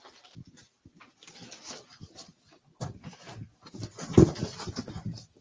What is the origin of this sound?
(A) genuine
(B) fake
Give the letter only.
A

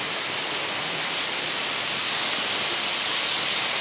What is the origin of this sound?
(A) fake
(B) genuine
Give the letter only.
B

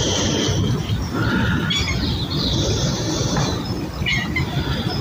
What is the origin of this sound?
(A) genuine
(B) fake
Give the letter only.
A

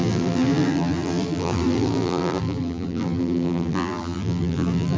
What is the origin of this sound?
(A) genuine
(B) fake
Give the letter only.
B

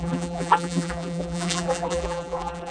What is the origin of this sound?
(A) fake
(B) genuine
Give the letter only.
A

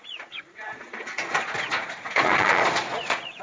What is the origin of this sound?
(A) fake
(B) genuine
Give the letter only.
A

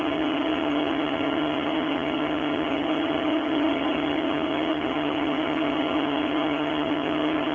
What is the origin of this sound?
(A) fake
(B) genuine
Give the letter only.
A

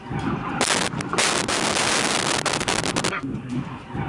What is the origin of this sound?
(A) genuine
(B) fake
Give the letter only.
A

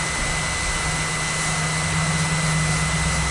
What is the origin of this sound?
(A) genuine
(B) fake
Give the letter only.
A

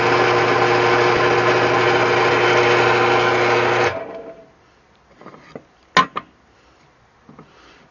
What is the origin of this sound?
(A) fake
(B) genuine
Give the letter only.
B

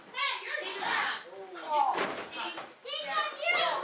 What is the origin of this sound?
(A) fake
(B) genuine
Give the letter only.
B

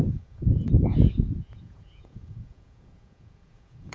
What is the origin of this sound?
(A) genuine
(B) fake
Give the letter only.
B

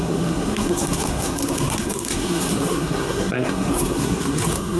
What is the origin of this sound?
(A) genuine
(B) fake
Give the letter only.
B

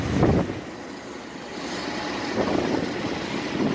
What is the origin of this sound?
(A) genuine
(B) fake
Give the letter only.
A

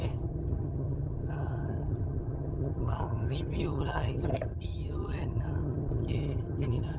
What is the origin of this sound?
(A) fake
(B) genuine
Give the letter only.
A